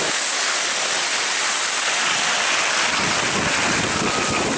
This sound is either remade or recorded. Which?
recorded